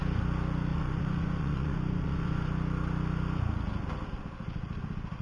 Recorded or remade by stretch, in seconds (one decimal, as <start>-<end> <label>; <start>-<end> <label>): 0.0-0.7 recorded; 0.7-2.5 remade; 2.5-5.2 recorded